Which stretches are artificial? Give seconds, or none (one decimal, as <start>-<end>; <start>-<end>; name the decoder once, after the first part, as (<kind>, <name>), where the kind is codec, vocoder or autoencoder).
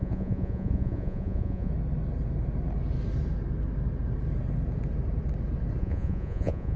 0.0-1.7 (vocoder, Vocos); 5.8-6.8